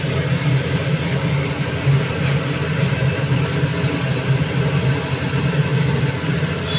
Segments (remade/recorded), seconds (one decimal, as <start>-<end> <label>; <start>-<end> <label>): 0.0-6.8 recorded